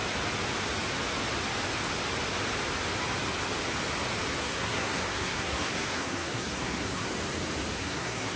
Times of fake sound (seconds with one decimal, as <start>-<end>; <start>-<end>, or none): 4.4-7.1; 7.7-8.4